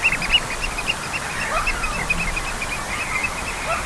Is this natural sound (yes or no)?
yes